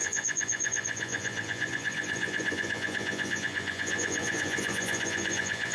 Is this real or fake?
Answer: fake